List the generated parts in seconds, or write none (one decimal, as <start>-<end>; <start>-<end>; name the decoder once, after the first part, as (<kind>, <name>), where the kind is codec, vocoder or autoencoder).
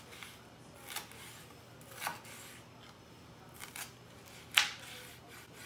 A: none